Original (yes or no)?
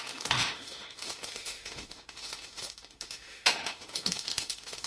no